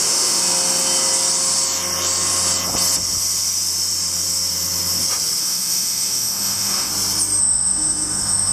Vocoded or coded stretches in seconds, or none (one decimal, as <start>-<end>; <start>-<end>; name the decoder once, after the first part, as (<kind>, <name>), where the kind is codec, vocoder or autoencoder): 0.0-0.4 (autoencoder, DAC-VAE); 5.4-6.9; 7.4-8.5